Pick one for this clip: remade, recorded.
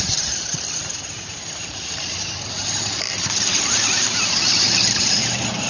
remade